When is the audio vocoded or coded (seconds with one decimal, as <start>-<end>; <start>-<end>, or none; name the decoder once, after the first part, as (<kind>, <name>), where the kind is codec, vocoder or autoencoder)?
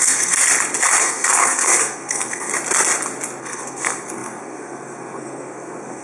0.0-0.4 (codec, SNAC); 1.0-2.5; 3.4-6.0